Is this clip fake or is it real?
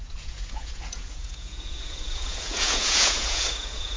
fake